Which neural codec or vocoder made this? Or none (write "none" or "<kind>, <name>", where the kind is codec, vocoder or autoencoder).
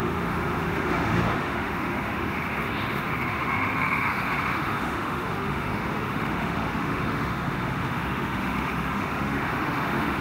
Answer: autoencoder, DAC-VAE